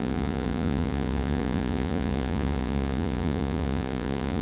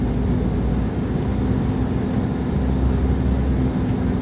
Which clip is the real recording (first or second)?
second